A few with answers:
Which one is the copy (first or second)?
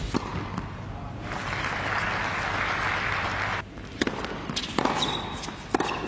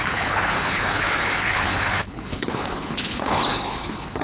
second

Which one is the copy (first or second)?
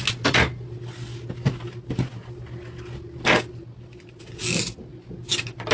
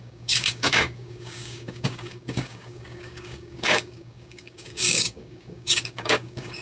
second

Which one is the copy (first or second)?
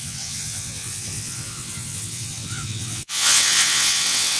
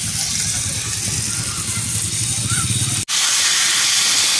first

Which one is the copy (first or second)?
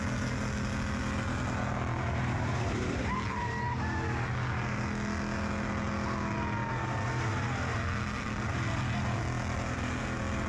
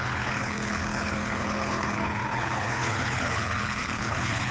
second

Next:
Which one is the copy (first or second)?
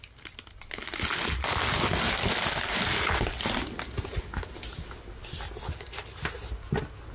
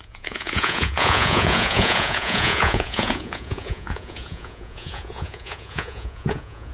second